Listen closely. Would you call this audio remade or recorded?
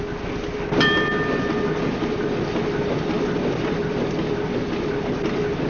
recorded